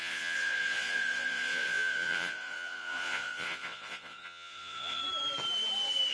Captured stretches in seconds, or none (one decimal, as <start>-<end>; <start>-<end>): 5.0-6.1